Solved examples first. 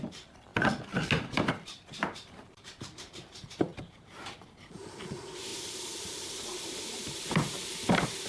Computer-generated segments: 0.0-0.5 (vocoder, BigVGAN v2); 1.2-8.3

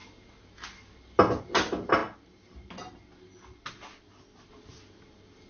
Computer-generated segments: none

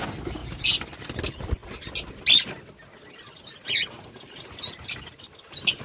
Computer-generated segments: none

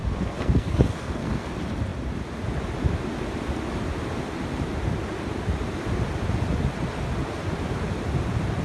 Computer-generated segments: 0.0-1.5 (codec, SNAC)

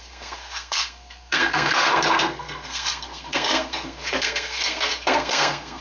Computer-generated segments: 0.0-5.8 (codec, SNAC)

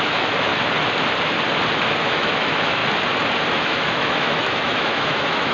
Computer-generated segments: 0.0-0.5 (autoencoder, DAC-VAE); 2.0-2.8; 3.5-5.5

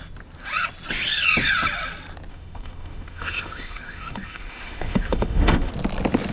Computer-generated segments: 2.3-5.7 (autoencoder, DAC-VAE)